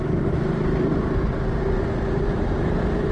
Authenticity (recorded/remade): recorded